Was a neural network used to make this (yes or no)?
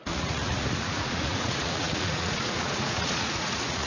yes